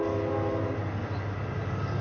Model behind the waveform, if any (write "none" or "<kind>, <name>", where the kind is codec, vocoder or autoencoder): none